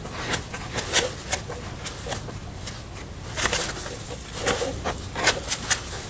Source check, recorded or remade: recorded